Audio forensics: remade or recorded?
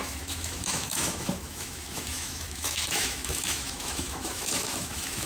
remade